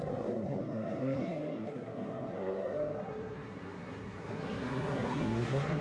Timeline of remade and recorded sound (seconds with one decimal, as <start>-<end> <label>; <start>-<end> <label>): 0.0-5.8 remade